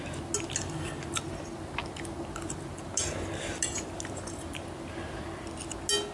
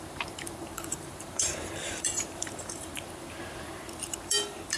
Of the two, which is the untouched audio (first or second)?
first